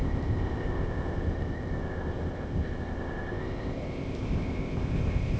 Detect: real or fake fake